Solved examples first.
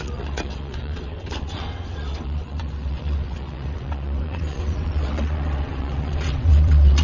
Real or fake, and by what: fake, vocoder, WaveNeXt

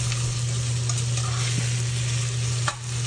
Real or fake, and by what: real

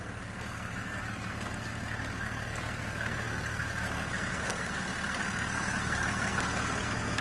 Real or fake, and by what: fake, codec, SNAC